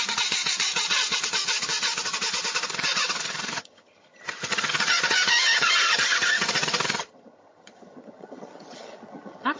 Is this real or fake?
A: fake